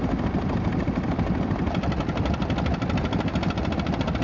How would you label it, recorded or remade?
recorded